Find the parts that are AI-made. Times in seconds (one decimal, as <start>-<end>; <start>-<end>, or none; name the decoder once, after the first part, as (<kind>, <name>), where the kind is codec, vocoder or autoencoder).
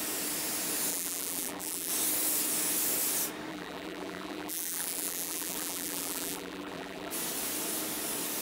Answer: 0.9-1.9 (vocoder, BigVGAN v2); 3.5-7.1